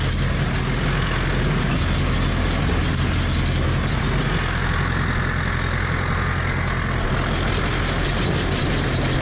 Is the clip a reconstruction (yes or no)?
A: no